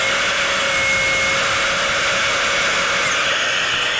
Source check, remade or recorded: recorded